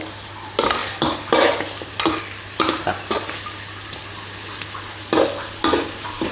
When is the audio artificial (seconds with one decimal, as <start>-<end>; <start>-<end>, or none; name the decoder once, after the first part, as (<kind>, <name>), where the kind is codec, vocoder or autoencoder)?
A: none